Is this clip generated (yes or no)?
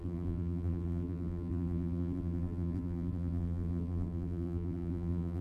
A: yes